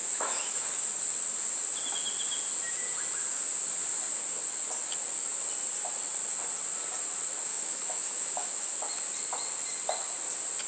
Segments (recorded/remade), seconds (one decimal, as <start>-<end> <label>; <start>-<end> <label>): 0.0-0.7 remade; 0.7-7.5 recorded; 7.5-8.7 remade; 8.7-10.7 recorded